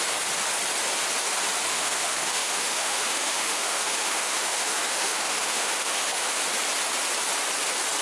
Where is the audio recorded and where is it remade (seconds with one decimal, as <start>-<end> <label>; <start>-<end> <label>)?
0.0-1.7 recorded; 1.7-6.4 remade; 6.4-8.0 recorded